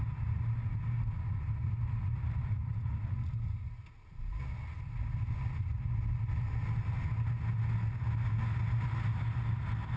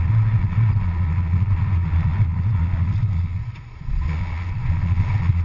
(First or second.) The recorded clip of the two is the first